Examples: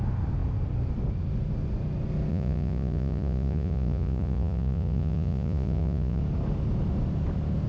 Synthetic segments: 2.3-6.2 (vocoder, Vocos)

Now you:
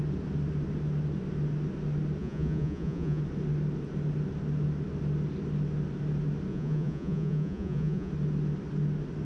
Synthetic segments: 2.2-3.2 (vocoder, Vocos); 6.5-8.1

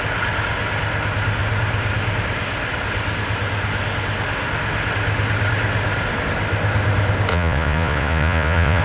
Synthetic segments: 7.3-8.8 (vocoder, Vocos)

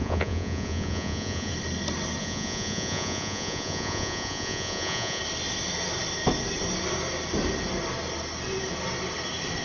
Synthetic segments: 0.0-1.5 (vocoder, Vocos); 2.2-5.2

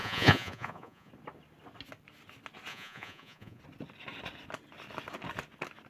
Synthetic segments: 0.0-1.1 (vocoder, Vocos); 2.7-3.6